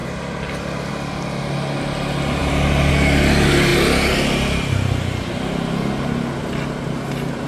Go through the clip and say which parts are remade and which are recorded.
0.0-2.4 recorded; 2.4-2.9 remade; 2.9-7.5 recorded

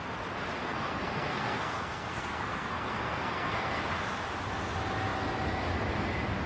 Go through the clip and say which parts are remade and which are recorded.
0.0-0.6 recorded; 0.6-3.9 remade; 3.9-6.5 recorded

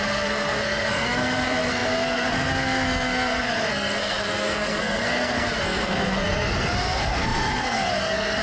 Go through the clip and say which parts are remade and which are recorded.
0.0-8.4 remade

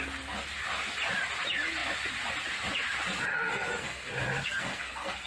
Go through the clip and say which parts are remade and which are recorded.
0.0-3.3 recorded; 3.3-4.1 remade; 4.1-4.5 recorded; 4.5-5.3 remade